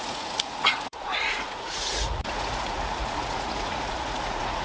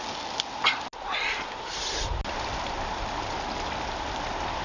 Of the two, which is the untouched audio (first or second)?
second